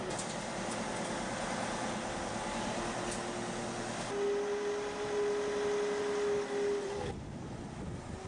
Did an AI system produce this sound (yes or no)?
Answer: no